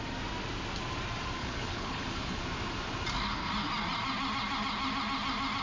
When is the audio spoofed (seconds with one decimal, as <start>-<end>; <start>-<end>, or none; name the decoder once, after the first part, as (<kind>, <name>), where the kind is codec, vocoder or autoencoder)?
1.4-2.4 (codec, HILCodec)